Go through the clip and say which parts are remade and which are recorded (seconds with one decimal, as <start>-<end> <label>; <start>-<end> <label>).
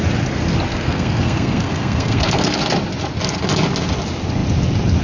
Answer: 0.0-0.7 recorded; 0.7-2.6 remade; 2.6-5.0 recorded